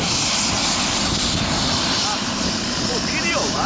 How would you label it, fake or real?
real